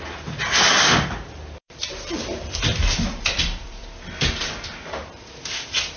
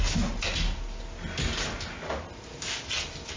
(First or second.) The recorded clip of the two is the second